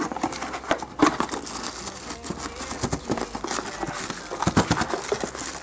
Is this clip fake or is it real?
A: real